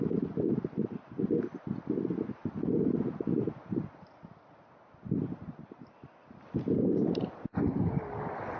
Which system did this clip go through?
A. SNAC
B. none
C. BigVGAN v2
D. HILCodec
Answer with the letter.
B